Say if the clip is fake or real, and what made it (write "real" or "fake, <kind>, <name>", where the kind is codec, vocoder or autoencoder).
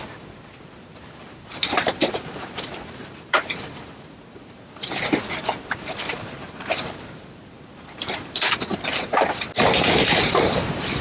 fake, vocoder, BigVGAN v2